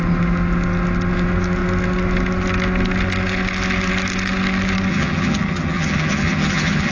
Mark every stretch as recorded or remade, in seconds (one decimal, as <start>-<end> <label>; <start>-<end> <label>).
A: 0.0-4.9 recorded; 4.9-6.9 remade